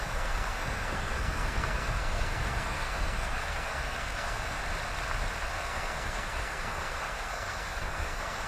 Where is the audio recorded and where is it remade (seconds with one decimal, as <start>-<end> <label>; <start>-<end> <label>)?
0.0-4.6 remade; 4.6-5.5 recorded; 5.5-8.5 remade